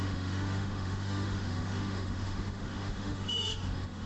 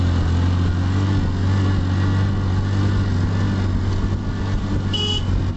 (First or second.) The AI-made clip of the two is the first